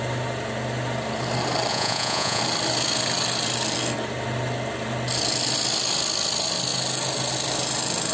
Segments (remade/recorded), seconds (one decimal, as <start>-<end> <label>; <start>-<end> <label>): 0.0-1.7 recorded; 1.7-2.4 remade; 2.4-8.1 recorded